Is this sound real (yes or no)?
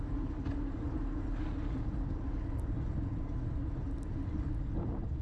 yes